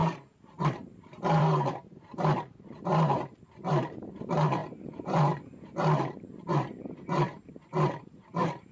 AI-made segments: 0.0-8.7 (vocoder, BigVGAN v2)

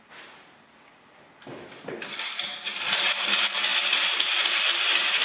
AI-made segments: none

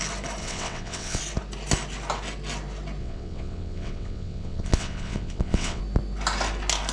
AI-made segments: 0.4-1.2 (vocoder, WaveNeXt); 3.0-5.8

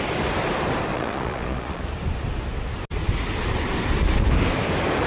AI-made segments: 0.9-1.8 (vocoder, Vocos)

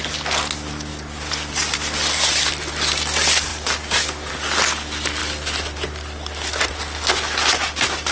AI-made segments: none